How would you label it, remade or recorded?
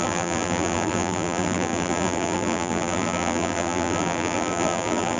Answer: remade